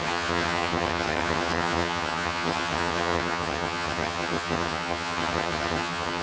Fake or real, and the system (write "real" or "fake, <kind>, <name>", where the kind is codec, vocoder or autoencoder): fake, vocoder, HiFi-GAN